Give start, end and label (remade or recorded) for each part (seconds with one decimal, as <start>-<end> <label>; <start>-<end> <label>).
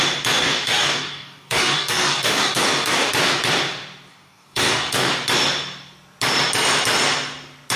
0.0-0.4 recorded; 0.4-3.1 remade; 3.1-4.1 recorded; 4.1-5.1 remade; 5.1-7.8 recorded